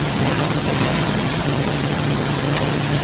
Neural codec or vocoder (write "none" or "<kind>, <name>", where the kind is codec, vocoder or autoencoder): vocoder, HiFi-GAN